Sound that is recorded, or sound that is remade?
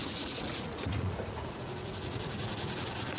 remade